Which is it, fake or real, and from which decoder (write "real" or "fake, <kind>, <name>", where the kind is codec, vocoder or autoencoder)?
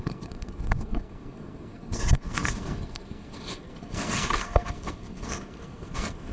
fake, codec, SNAC